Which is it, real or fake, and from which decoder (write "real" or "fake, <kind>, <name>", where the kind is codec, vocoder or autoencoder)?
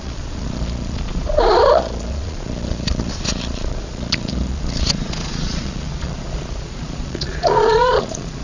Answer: fake, vocoder, Vocos